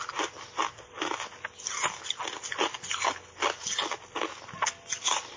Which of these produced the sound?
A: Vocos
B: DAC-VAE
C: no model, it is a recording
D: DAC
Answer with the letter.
C